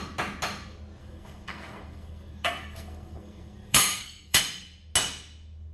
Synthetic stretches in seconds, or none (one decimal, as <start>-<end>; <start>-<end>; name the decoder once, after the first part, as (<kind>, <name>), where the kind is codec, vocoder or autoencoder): 1.0-4.4 (codec, SNAC)